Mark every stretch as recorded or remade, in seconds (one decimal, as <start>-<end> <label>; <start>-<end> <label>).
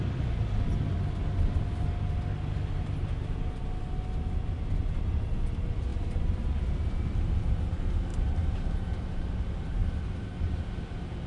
0.0-5.9 recorded; 5.9-7.5 remade; 7.5-8.1 recorded; 8.1-9.4 remade; 9.4-9.8 recorded; 9.8-10.4 remade; 10.4-11.3 recorded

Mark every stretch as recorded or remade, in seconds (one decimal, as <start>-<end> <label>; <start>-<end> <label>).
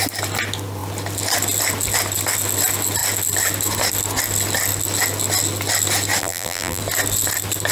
0.0-6.2 recorded; 6.2-6.8 remade; 6.8-7.7 recorded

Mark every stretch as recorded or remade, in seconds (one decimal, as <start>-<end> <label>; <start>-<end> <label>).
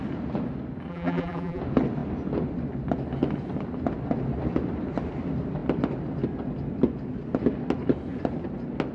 0.0-0.9 recorded; 0.9-1.6 remade; 1.6-8.9 recorded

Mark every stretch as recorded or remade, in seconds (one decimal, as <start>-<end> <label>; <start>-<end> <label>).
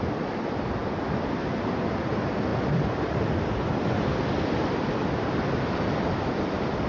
0.0-0.8 remade; 0.8-2.1 recorded; 2.1-6.9 remade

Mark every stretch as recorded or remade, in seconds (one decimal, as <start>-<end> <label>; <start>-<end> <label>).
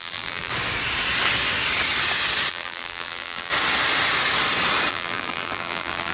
0.0-0.5 remade; 0.5-2.5 recorded; 2.5-3.5 remade; 3.5-4.9 recorded; 4.9-6.1 remade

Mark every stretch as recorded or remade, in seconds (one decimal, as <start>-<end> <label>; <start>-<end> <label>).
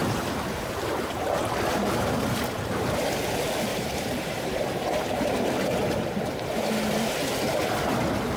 0.0-2.7 remade; 2.7-3.7 recorded; 3.7-6.6 remade; 6.6-8.4 recorded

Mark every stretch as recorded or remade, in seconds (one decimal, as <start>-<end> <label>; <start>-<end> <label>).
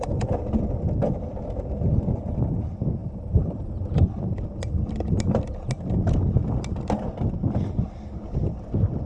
0.0-3.0 recorded; 3.0-3.7 remade; 3.7-9.1 recorded